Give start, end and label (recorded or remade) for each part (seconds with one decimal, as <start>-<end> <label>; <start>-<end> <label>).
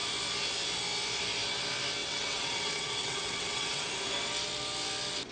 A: 0.0-2.0 recorded; 2.0-3.9 remade; 3.9-5.3 recorded